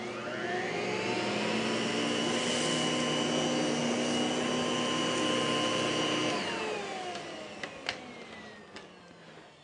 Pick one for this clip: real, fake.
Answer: real